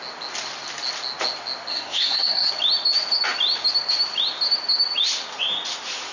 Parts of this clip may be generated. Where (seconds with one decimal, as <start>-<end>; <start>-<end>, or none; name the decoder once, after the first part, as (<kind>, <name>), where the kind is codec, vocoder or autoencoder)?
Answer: 1.7-2.5 (codec, SNAC)